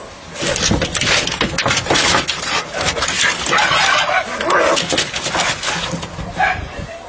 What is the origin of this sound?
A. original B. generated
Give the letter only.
A